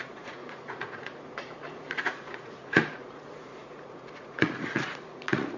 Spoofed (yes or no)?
yes